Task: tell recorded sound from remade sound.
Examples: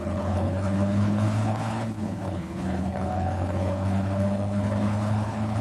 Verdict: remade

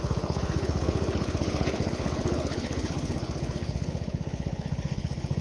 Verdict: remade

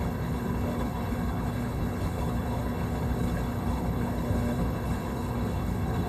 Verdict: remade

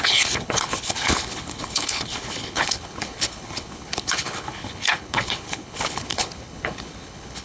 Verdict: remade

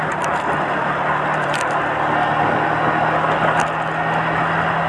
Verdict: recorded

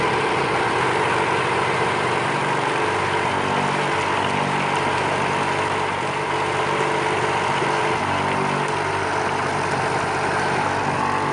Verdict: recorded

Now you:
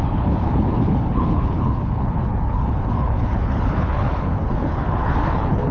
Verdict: remade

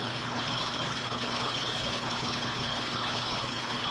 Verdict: remade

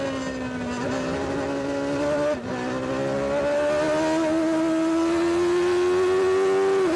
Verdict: recorded